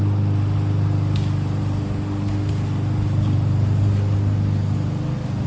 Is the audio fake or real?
real